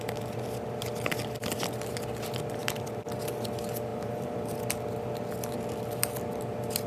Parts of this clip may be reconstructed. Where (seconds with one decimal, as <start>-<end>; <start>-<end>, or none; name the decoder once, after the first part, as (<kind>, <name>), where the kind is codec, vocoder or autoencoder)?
2.6-3.2 (vocoder, BigVGAN v2); 3.9-4.6